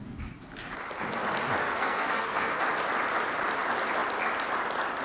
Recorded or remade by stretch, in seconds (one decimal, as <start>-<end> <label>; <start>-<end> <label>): 0.0-1.6 recorded; 1.6-2.6 remade; 2.6-5.0 recorded